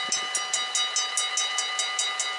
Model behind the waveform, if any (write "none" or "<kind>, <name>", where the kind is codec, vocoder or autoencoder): none